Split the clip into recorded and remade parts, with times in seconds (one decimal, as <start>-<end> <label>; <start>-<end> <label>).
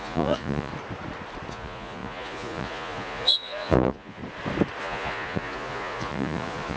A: 0.0-0.7 remade; 0.7-1.5 recorded; 1.5-4.2 remade; 4.2-4.8 recorded; 4.8-6.8 remade